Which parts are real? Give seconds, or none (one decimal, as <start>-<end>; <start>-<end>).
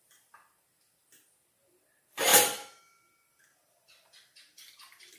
0.0-5.2